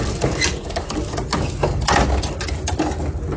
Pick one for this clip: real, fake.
real